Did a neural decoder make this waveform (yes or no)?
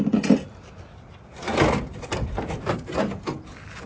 no